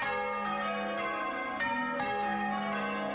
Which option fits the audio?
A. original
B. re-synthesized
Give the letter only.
A